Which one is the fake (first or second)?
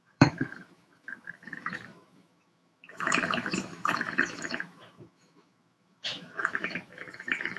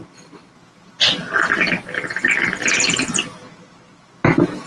first